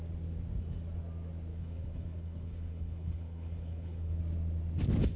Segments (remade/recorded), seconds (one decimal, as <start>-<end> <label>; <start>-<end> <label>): 0.0-1.5 recorded; 1.5-4.2 remade; 4.2-5.2 recorded